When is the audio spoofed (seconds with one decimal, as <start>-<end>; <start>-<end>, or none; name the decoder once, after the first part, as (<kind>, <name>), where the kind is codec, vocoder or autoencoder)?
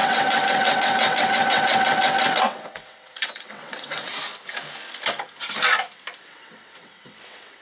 0.0-4.1 (vocoder, WaveNeXt); 6.2-7.6